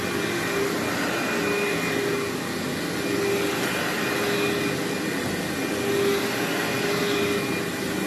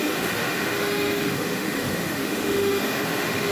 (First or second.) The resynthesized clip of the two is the second